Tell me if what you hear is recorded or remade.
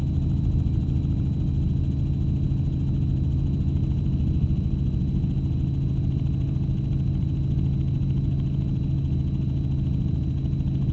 recorded